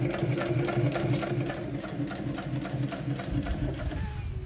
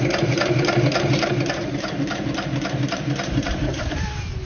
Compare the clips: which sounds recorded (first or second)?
first